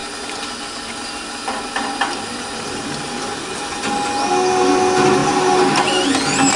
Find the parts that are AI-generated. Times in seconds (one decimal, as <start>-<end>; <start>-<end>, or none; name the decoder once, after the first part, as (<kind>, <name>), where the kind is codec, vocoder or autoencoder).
none